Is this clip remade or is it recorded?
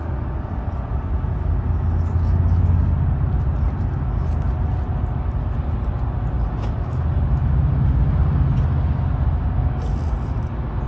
recorded